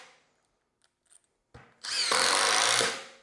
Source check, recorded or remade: recorded